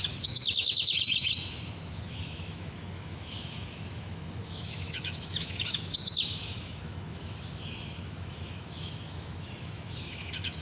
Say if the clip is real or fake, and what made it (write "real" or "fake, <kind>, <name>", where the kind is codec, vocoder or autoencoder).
fake, autoencoder, DAC-VAE